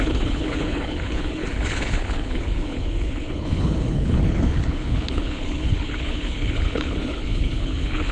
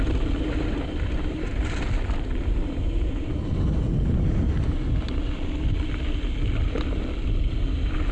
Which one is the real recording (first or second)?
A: second